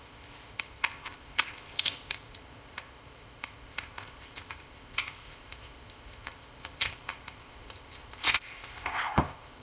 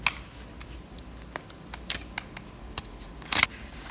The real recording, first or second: second